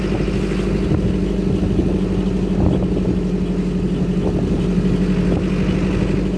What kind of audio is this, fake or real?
real